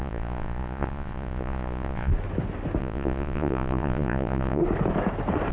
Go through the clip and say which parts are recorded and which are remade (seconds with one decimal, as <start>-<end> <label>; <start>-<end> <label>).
0.0-2.1 remade; 2.1-2.8 recorded; 2.8-4.6 remade; 4.6-5.5 recorded